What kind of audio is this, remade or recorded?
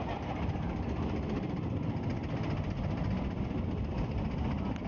recorded